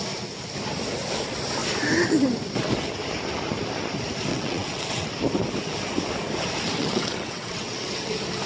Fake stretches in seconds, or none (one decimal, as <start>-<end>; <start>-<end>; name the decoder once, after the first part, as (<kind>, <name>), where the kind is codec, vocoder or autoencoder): 4.3-5.1 (vocoder, WaveNeXt); 6.8-8.1